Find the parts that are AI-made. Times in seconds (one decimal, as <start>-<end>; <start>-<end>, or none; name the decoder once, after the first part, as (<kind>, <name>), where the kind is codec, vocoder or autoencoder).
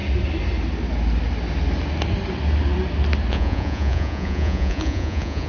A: 3.3-5.5 (vocoder, Vocos)